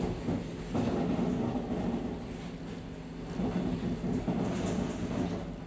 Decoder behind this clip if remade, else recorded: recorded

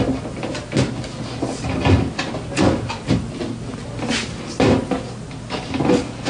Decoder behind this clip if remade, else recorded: recorded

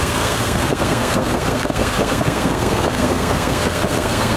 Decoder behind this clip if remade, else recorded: remade, codec, SNAC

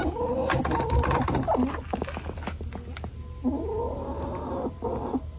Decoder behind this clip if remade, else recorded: recorded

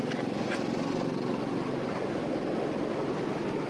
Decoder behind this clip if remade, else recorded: recorded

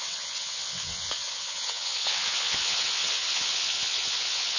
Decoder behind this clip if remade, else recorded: remade, vocoder, WaveNeXt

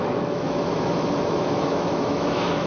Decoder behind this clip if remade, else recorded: remade, autoencoder, DAC-VAE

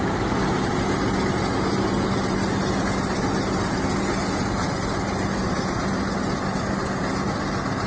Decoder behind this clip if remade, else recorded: recorded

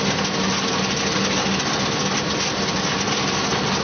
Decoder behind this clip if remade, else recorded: recorded